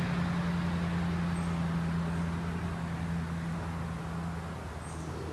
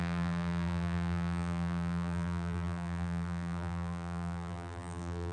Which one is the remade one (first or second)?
second